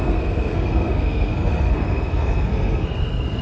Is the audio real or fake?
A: fake